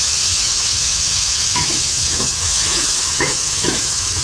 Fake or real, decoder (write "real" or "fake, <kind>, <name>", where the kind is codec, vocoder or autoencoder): fake, autoencoder, DAC-VAE